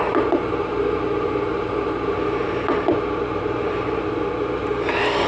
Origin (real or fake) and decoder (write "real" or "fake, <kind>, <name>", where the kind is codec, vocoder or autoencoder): real